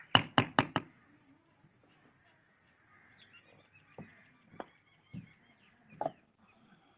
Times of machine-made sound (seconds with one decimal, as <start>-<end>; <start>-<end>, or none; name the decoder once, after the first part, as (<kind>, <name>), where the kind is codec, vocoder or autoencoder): 0.0-4.1 (vocoder, BigVGAN v2)